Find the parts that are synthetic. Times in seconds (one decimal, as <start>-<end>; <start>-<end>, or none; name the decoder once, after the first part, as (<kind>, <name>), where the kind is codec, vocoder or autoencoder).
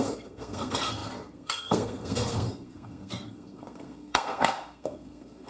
0.0-5.5 (codec, SNAC)